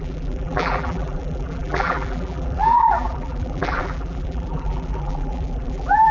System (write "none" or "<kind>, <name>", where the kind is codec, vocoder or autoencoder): vocoder, BigVGAN v2